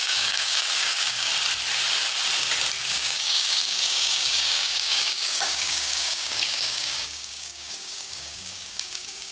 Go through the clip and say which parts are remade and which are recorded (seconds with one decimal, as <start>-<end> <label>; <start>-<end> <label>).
0.0-1.3 remade; 1.3-2.9 recorded; 2.9-9.3 remade